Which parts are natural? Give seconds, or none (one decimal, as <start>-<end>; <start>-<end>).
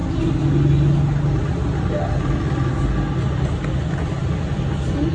0.0-5.1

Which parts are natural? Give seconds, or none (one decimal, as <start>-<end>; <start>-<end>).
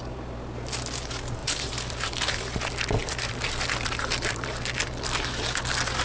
0.0-1.4; 2.6-3.0; 3.5-6.0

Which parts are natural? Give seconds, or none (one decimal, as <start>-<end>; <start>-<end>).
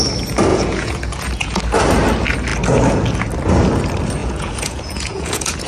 0.0-0.5; 1.6-4.2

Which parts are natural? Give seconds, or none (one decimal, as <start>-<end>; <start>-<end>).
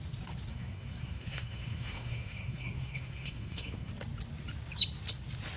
0.0-0.5; 3.9-5.6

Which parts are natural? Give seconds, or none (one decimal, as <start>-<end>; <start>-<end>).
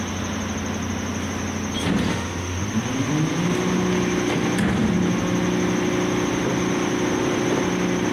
0.0-2.1; 2.6-8.1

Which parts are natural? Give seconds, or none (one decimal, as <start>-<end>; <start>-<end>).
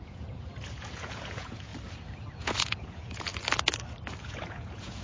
1.7-2.4; 3.3-4.2